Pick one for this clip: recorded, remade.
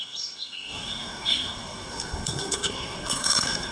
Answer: remade